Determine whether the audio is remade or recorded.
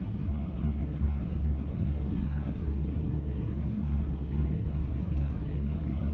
remade